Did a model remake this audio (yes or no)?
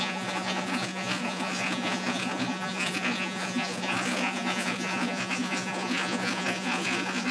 yes